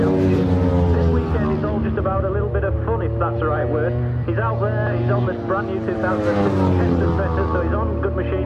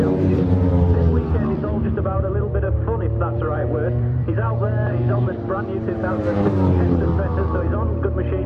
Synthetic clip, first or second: second